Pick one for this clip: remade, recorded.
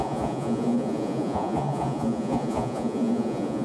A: remade